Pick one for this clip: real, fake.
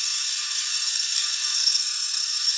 fake